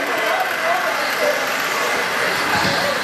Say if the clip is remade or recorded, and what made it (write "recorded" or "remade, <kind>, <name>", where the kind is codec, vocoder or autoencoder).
recorded